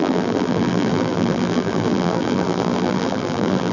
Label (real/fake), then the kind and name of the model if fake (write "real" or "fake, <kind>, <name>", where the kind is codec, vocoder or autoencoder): fake, vocoder, BigVGAN v2